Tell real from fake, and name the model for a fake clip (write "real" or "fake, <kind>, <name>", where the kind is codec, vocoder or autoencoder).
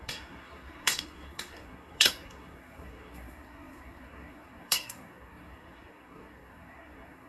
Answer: fake, codec, SNAC